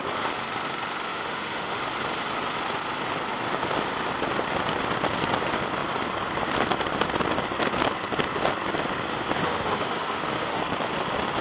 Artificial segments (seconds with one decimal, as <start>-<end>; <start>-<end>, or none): 1.1-1.8; 9.1-10.6